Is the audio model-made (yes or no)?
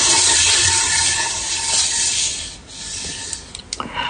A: no